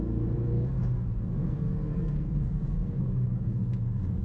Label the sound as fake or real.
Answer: fake